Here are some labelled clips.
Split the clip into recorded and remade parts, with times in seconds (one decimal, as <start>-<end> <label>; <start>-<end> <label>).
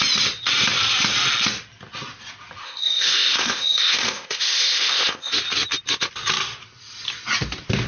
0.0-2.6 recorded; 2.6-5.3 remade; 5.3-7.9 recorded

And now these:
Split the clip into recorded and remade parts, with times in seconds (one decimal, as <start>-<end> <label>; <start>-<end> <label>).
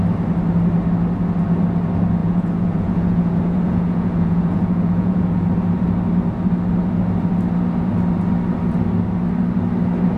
0.0-2.2 recorded; 2.2-5.5 remade; 5.5-10.2 recorded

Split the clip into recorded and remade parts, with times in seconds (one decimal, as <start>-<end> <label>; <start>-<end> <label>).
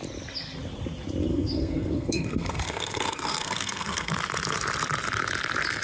0.0-1.3 recorded; 1.3-4.1 remade; 4.1-5.8 recorded